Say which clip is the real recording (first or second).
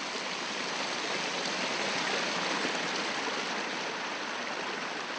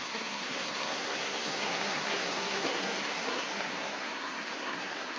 first